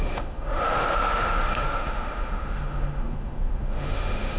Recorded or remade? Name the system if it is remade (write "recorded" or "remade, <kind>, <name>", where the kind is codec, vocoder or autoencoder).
remade, autoencoder, DAC-VAE